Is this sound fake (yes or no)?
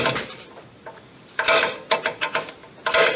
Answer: yes